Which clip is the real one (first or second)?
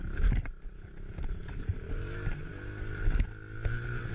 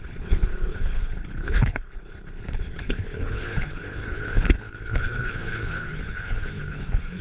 first